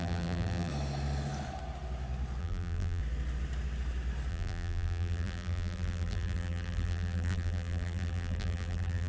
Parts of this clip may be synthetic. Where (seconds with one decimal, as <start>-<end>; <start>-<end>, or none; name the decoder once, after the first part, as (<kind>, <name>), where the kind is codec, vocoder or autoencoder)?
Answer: 0.0-0.7 (vocoder, BigVGAN v2); 2.4-3.0; 4.3-9.1